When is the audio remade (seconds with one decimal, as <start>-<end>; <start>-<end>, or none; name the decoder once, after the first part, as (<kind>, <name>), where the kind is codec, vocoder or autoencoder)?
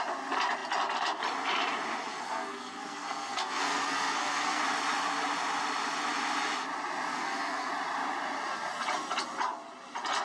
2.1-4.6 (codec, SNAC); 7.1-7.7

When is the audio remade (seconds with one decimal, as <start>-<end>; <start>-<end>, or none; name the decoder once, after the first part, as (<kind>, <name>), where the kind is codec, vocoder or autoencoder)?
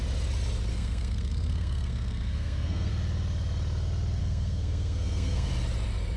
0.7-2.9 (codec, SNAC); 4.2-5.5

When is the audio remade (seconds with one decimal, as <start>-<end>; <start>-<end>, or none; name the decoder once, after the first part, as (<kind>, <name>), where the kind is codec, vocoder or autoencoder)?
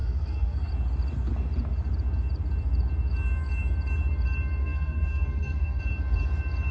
0.0-0.7 (codec, SNAC); 4.6-5.8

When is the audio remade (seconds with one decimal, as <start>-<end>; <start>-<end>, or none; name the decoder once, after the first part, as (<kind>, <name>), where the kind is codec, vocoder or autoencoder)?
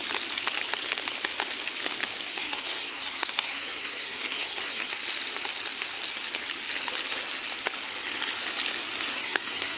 2.3-4.9 (codec, SNAC); 9.1-9.8